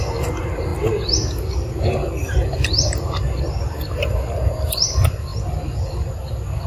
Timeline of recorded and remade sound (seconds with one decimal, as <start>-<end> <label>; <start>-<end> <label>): 0.0-6.7 recorded